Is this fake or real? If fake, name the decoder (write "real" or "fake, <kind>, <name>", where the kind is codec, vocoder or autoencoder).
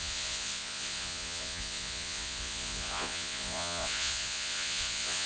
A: fake, vocoder, Vocos